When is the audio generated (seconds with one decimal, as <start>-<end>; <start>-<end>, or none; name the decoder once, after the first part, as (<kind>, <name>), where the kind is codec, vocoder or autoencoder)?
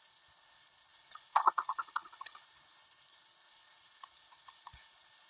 0.0-5.3 (codec, HILCodec)